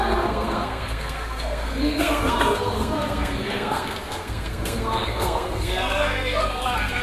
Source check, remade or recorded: remade